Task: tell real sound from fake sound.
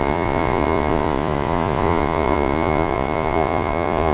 fake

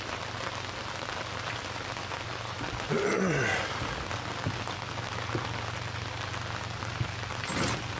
real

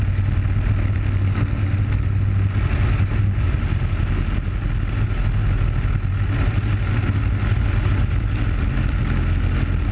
real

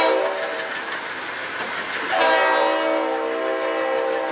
real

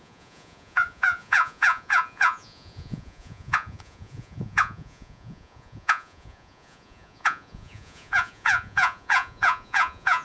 fake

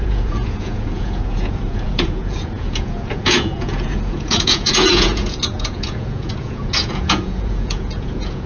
fake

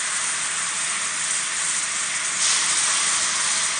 real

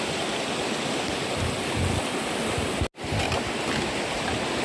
real